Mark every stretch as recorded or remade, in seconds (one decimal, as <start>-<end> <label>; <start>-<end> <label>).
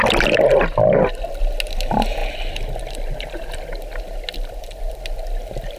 0.0-5.8 recorded